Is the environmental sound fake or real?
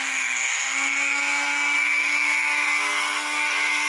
fake